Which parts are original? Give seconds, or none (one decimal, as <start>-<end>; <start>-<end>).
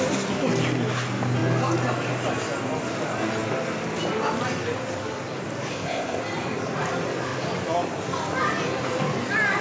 0.0-5.7; 6.2-9.6